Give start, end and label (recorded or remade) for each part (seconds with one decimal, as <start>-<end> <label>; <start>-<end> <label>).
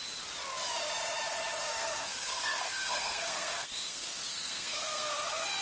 0.0-1.7 recorded; 1.7-5.1 remade; 5.1-5.6 recorded